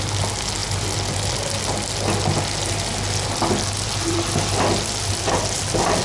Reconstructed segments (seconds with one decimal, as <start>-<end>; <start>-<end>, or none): none